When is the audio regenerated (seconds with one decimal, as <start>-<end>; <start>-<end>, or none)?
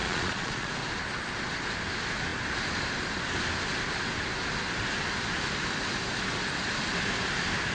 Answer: 0.0-0.7